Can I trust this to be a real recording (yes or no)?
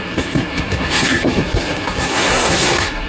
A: no